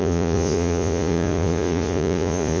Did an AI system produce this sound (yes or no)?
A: yes